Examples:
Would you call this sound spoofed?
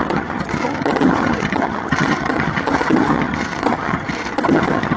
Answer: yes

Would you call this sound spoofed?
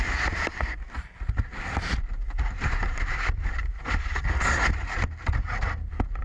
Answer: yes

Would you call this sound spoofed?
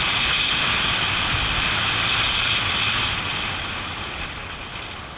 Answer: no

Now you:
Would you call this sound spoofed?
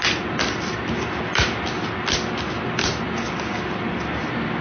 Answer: no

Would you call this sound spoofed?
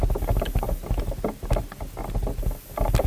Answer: no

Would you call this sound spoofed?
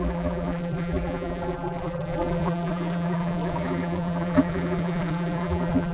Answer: yes